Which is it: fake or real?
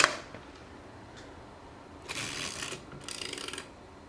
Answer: real